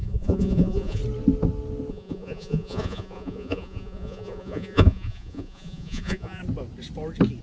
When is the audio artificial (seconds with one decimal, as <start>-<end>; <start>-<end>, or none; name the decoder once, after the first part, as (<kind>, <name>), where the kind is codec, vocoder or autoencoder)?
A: 0.0-1.0 (vocoder, Vocos); 1.9-6.4